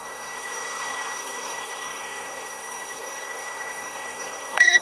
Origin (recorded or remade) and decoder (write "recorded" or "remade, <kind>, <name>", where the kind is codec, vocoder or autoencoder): remade, codec, SNAC